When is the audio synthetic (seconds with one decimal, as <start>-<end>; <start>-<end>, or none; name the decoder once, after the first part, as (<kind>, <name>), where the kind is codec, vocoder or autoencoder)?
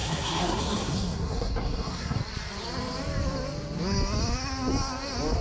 0.0-2.2 (codec, SNAC)